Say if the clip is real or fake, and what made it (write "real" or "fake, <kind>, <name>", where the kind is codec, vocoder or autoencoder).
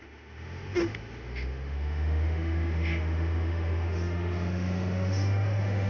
fake, autoencoder, DAC-VAE